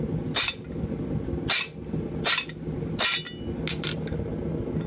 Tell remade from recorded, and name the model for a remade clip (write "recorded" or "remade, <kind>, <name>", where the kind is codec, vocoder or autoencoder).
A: recorded